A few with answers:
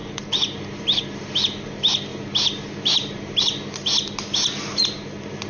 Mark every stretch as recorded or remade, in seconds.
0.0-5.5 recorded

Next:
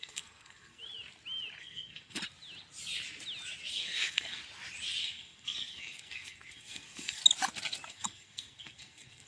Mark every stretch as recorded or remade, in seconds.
0.0-0.8 remade; 0.8-1.6 recorded; 1.6-2.2 remade; 2.2-3.7 recorded; 3.7-4.4 remade; 4.4-5.0 recorded; 5.0-7.2 remade; 7.2-7.9 recorded; 7.9-9.3 remade